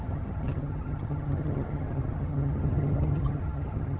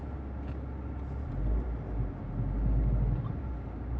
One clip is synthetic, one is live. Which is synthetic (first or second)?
first